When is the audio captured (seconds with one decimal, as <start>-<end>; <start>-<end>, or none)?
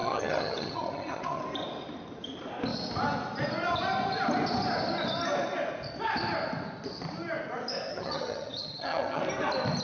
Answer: 1.4-7.9; 9.2-9.8